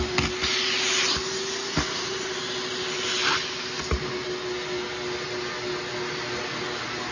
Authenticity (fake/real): real